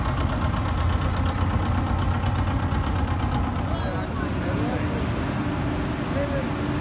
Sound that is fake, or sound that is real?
real